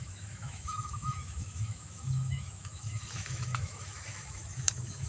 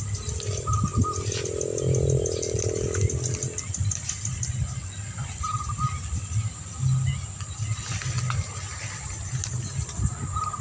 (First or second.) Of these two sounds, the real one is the second